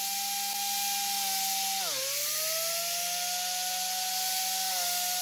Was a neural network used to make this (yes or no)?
no